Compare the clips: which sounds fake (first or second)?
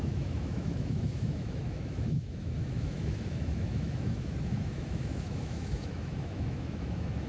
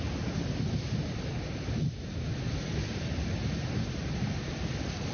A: first